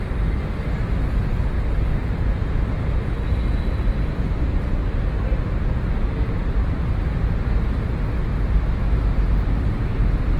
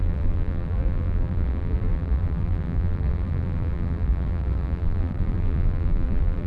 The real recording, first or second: first